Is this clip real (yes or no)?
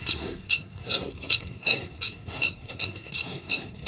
no